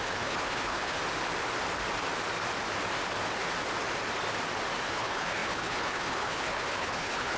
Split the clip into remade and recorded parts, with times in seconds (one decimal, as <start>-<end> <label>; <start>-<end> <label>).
0.0-1.0 remade; 1.0-4.9 recorded; 4.9-7.4 remade